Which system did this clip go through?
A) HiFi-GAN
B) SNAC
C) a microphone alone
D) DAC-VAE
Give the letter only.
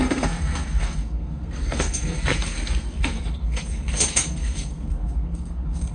B